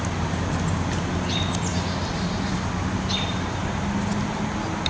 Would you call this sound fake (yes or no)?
no